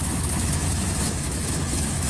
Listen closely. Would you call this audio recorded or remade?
remade